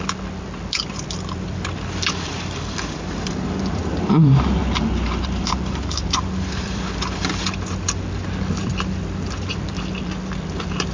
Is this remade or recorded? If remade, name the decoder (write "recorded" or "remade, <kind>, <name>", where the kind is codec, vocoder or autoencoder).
remade, vocoder, BigVGAN v2